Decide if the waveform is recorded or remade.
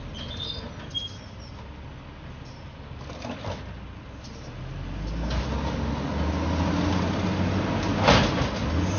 recorded